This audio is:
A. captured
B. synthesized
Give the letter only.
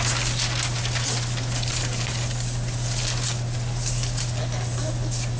A